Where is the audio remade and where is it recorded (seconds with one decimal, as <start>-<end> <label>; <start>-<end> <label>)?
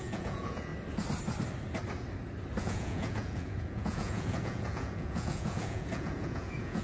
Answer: 0.0-0.7 remade; 0.7-2.6 recorded; 2.6-6.8 remade